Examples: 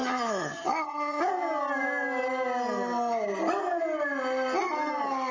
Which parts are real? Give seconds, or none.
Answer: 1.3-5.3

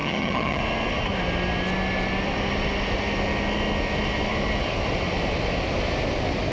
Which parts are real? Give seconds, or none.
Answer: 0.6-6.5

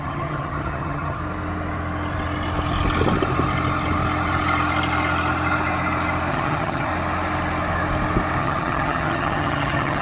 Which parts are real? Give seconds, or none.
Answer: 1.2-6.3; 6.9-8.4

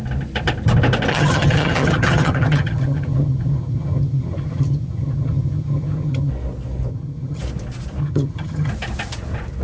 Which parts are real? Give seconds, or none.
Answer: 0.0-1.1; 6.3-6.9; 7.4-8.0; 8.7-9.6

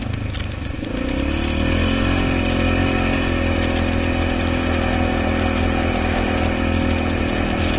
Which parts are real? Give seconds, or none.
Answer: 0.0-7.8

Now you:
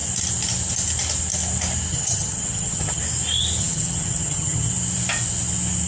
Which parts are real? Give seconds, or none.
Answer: 0.0-1.9; 3.0-3.6; 4.7-5.9